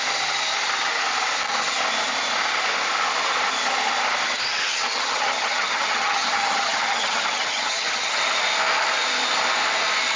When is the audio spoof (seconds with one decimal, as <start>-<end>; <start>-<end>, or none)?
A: 4.7-8.4